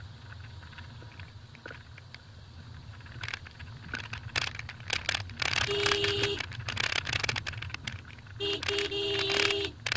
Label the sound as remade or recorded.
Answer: recorded